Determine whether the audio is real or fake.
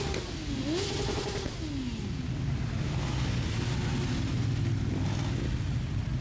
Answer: real